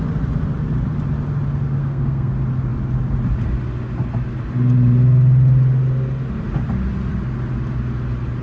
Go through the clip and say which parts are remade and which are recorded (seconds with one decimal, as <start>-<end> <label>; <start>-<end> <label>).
0.0-1.8 recorded; 1.8-2.3 remade; 2.3-8.4 recorded